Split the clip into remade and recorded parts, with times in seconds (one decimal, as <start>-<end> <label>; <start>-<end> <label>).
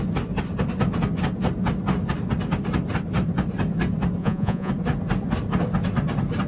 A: 0.0-4.2 recorded; 4.2-4.7 remade; 4.7-6.5 recorded